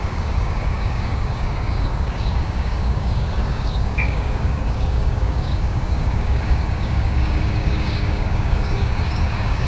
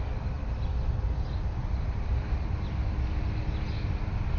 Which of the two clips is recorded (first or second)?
second